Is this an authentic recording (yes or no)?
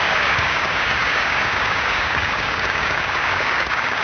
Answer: no